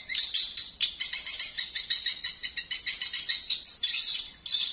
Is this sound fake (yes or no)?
no